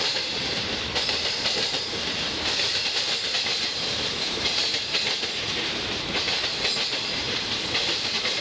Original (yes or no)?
no